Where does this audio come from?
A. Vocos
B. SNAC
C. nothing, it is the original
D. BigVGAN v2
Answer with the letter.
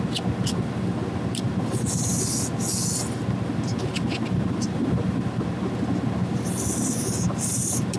C